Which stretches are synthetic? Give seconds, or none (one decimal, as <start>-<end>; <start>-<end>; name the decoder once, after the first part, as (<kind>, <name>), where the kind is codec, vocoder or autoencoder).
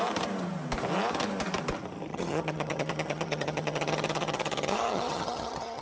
2.1-5.8 (vocoder, HiFi-GAN)